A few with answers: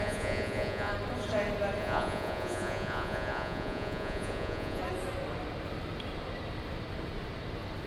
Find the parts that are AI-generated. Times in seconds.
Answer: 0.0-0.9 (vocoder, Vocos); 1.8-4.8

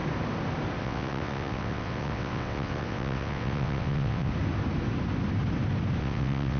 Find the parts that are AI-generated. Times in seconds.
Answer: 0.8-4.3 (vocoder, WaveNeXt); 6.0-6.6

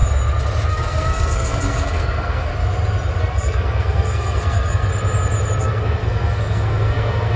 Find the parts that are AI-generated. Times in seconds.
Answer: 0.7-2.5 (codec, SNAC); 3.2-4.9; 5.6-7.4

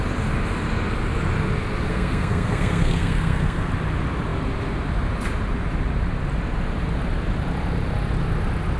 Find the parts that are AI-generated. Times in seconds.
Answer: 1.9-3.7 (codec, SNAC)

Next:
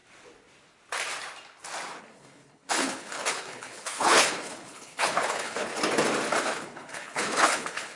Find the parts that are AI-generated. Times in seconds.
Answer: 2.0-5.7 (codec, HILCodec); 6.4-8.0

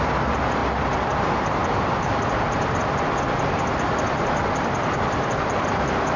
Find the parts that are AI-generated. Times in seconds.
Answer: 0.0-0.6 (vocoder, BigVGAN v2); 1.2-6.2